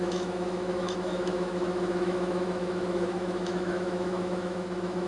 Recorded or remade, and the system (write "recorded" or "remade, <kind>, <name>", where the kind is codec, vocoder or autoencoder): remade, autoencoder, DAC-VAE